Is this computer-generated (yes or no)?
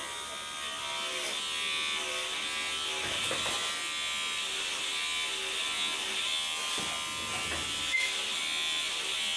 no